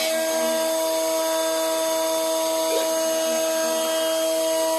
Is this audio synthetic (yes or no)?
no